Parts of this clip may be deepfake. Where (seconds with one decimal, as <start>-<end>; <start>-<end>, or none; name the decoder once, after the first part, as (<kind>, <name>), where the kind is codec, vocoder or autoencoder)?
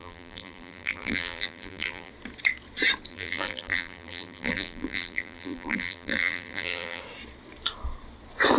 0.0-2.1 (vocoder, BigVGAN v2); 3.1-7.0